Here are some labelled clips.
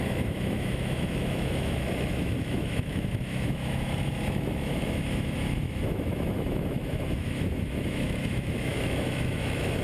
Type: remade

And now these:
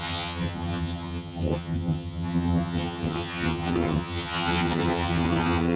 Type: remade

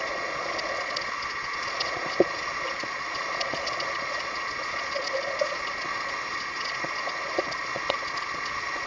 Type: remade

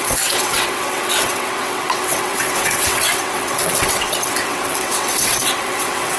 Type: remade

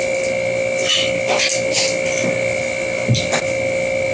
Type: recorded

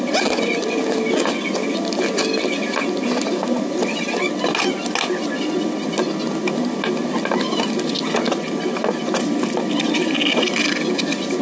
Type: recorded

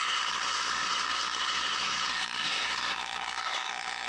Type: remade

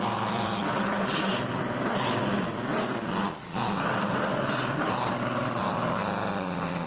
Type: remade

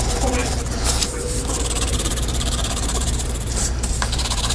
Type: remade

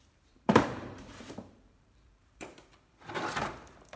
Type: remade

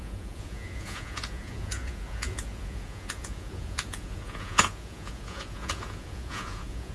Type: remade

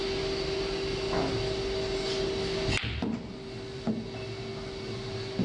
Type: recorded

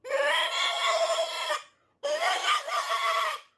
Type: recorded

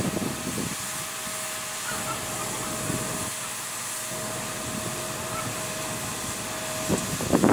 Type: recorded